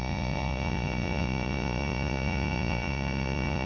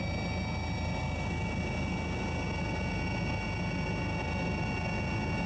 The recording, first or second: second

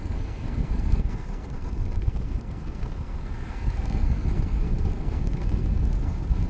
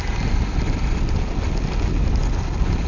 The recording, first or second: second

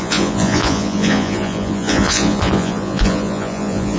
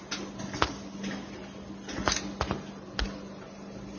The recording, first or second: second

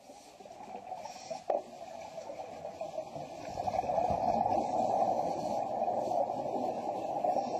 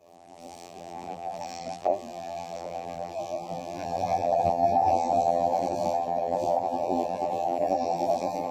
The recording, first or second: first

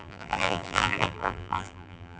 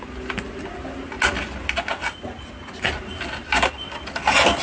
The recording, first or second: second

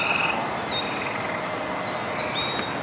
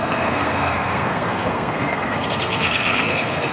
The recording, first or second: first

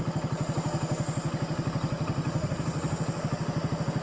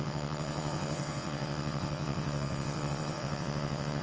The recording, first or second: first